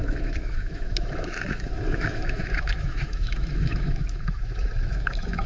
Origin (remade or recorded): remade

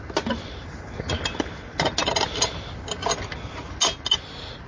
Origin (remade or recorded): recorded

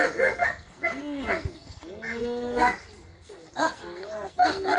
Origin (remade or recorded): remade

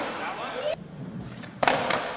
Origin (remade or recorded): remade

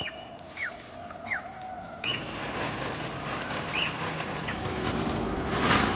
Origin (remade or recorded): recorded